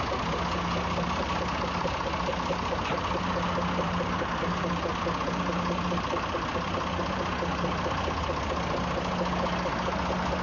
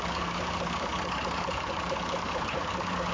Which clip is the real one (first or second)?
first